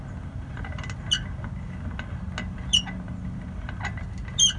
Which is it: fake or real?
real